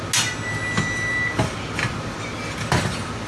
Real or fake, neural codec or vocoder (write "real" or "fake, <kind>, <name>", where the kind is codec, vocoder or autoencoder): real